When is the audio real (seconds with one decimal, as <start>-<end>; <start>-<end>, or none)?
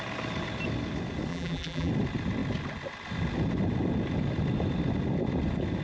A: 0.0-1.3; 1.9-5.8